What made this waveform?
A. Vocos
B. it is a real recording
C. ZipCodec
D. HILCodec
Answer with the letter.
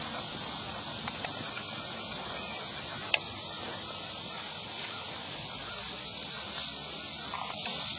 B